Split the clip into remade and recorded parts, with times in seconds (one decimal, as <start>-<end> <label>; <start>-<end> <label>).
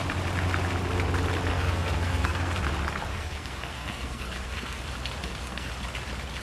0.0-1.5 recorded; 1.5-2.6 remade; 2.6-3.1 recorded; 3.1-4.8 remade; 4.8-5.2 recorded; 5.2-5.7 remade; 5.7-6.4 recorded